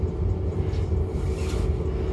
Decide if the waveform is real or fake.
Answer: real